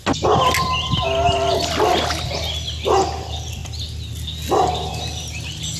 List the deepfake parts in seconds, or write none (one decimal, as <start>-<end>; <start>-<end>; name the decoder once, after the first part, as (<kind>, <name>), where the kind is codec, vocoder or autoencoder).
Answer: none